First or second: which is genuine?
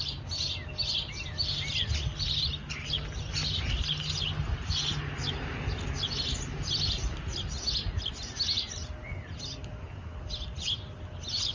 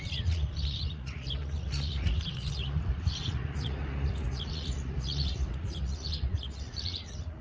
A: first